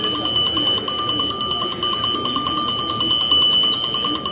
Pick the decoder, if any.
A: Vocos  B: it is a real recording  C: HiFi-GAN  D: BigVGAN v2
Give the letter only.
B